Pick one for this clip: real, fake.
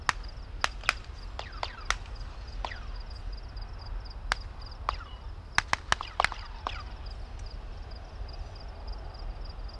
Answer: real